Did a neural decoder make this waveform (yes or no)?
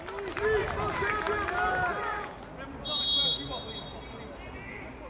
no